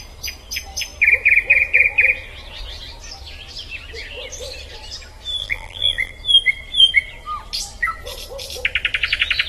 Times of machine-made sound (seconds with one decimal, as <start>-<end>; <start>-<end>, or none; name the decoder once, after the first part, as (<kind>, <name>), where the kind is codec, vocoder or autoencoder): 5.4-6.1 (vocoder, BigVGAN v2)